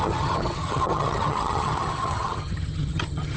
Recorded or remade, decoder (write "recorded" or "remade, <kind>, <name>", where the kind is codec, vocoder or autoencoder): remade, vocoder, HiFi-GAN